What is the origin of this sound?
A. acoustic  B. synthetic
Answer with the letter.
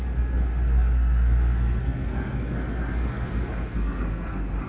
B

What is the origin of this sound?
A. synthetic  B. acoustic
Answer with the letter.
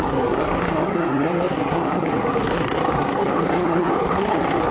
A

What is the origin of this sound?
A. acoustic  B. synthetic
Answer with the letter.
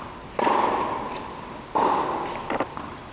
A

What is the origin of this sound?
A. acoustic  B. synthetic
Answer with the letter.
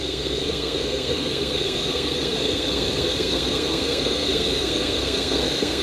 B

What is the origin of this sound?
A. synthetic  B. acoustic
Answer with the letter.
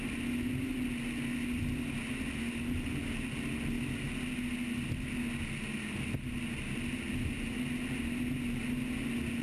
B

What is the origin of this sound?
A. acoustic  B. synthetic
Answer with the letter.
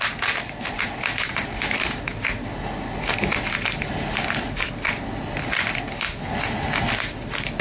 A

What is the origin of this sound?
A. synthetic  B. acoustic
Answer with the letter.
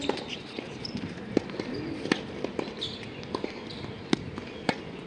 B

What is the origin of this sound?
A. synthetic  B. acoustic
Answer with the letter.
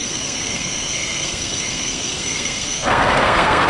A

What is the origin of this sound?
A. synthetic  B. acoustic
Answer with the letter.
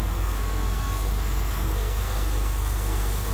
A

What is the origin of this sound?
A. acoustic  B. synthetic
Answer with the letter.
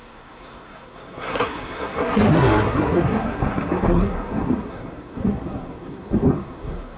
B